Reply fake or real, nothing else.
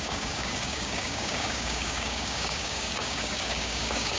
fake